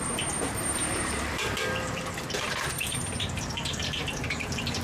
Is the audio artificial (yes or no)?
yes